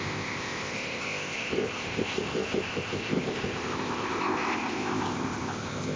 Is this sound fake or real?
fake